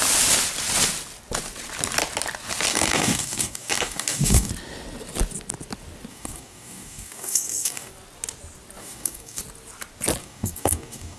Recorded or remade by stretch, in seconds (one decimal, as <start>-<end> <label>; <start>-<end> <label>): 0.0-2.7 recorded; 2.7-4.5 remade; 4.5-6.1 recorded; 6.1-7.9 remade; 7.9-8.8 recorded; 8.8-9.4 remade; 9.4-10.2 recorded; 10.2-11.2 remade